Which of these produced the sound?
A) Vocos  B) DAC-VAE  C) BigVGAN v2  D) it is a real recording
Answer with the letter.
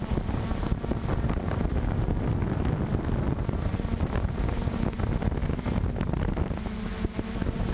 D